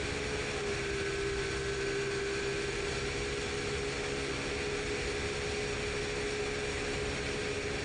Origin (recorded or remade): recorded